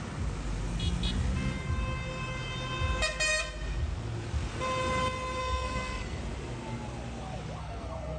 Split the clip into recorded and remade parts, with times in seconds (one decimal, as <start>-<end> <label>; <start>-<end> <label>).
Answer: 0.0-5.4 recorded; 5.4-6.2 remade; 6.2-7.6 recorded; 7.6-8.2 remade